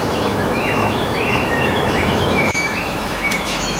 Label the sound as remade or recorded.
remade